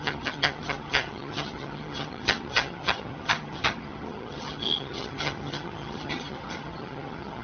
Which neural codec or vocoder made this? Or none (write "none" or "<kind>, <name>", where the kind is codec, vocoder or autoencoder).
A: vocoder, HiFi-GAN